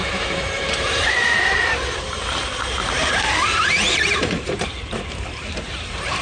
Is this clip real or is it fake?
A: fake